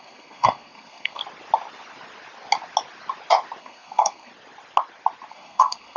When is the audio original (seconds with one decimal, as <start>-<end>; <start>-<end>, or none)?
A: 1.2-3.6; 4.3-5.3